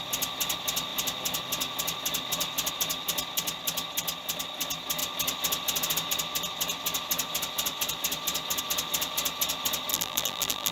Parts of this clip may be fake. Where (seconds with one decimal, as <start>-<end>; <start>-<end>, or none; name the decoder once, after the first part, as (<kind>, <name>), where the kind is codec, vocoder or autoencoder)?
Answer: 9.9-10.7 (vocoder, BigVGAN v2)